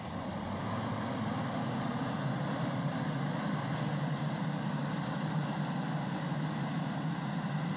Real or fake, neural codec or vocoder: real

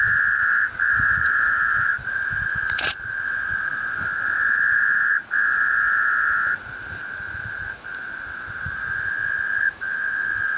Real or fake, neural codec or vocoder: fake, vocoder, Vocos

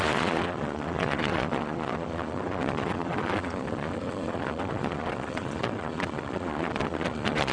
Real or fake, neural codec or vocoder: fake, vocoder, Vocos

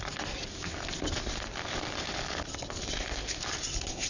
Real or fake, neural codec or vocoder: real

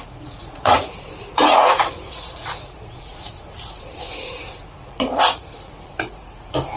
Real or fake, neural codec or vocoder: fake, vocoder, Vocos